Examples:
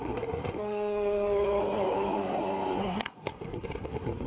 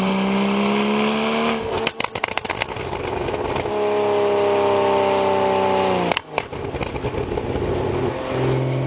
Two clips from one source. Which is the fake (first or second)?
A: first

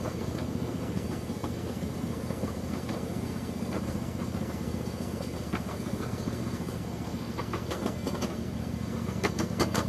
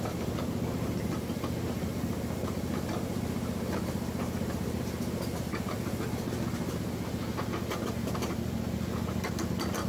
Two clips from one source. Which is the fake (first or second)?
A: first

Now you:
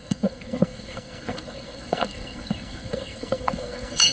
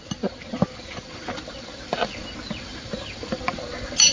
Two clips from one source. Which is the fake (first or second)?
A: first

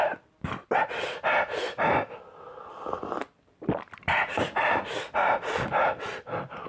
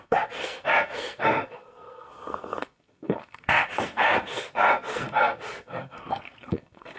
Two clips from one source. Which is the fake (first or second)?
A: second